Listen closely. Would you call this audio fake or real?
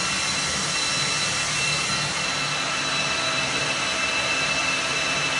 real